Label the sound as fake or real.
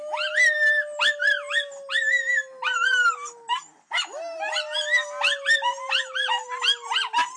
real